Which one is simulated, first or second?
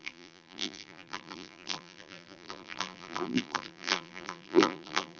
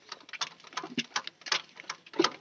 first